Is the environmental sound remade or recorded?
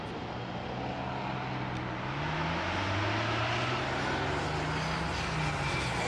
recorded